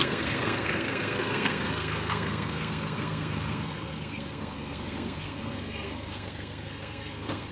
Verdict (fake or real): fake